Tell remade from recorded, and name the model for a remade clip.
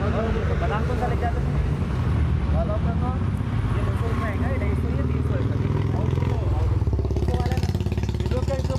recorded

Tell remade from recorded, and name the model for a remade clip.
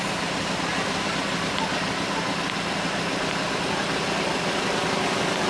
recorded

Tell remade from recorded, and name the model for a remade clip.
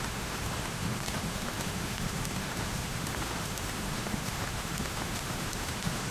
remade, autoencoder, DAC-VAE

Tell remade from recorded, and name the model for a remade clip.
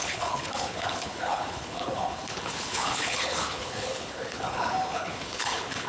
remade, codec, HILCodec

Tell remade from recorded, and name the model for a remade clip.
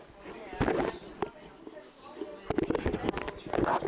recorded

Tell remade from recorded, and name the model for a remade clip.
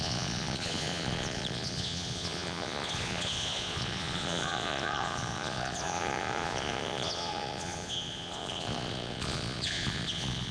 remade, vocoder, Vocos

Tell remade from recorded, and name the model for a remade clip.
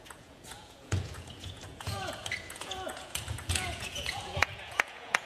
remade, vocoder, Vocos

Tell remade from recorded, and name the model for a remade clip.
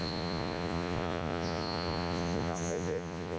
remade, vocoder, Vocos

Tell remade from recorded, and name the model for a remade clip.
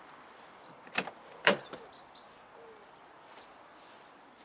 recorded